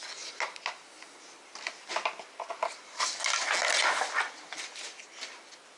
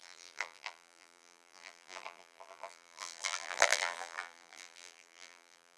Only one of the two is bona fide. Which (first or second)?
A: first